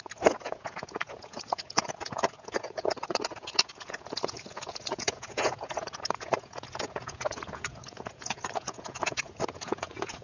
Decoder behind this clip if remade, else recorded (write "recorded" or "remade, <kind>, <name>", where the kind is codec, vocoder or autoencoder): remade, vocoder, Vocos